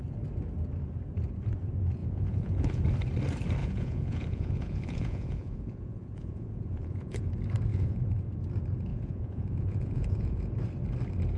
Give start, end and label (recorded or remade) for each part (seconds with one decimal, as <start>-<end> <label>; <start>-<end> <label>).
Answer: 0.0-2.0 recorded; 2.0-2.8 remade; 2.8-3.6 recorded; 3.6-7.3 remade; 7.3-7.7 recorded; 7.7-8.2 remade; 8.2-8.9 recorded; 8.9-10.5 remade; 10.5-11.4 recorded